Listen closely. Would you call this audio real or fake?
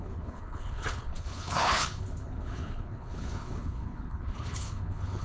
fake